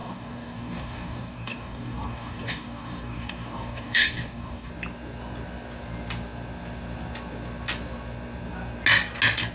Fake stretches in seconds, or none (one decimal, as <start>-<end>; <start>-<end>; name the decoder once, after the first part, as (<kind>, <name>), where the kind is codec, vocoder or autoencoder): 0.0-4.7 (codec, DAC)